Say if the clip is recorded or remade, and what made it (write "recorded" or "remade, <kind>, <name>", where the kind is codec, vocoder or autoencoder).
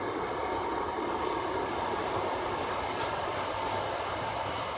remade, vocoder, BigVGAN v2